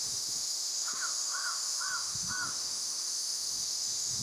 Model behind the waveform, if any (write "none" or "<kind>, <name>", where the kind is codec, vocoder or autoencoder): autoencoder, DAC-VAE